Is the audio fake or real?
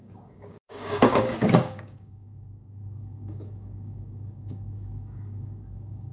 fake